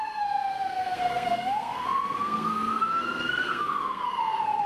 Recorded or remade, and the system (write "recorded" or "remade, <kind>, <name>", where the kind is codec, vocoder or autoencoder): remade, codec, SNAC